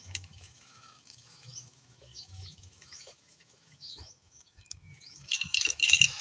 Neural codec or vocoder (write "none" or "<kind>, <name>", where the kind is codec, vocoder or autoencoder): autoencoder, DAC-VAE